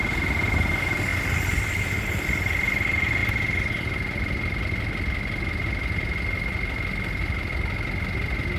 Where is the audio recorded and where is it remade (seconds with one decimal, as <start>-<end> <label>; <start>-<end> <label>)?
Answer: 0.0-8.6 recorded